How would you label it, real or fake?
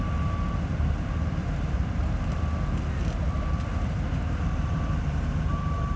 fake